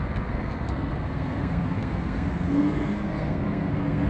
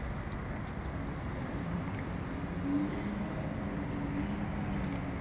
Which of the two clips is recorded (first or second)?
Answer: second